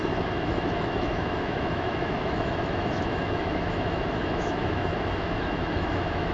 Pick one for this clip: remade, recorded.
remade